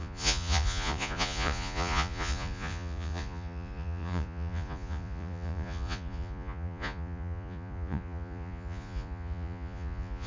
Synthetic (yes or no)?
yes